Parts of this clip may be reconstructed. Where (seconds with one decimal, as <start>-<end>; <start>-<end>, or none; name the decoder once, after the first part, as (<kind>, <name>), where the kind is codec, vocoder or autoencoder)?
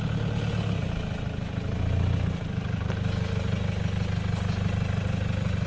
none